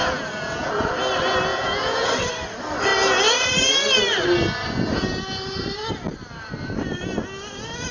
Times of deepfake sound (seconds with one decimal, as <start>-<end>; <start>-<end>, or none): 0.0-0.7; 1.5-2.1